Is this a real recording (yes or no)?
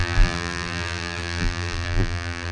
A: no